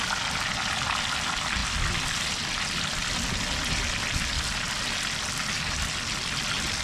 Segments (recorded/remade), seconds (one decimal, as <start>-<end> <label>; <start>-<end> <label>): 0.0-6.8 recorded